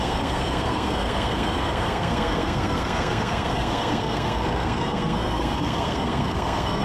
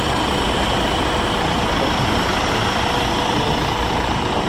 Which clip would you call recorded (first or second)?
second